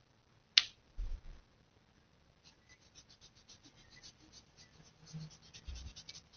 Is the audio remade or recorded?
recorded